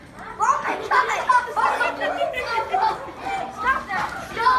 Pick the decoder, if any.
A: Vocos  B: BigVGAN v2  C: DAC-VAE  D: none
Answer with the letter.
D